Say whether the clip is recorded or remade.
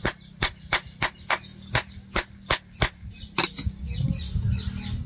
recorded